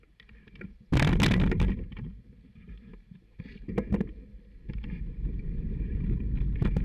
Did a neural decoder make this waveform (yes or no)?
no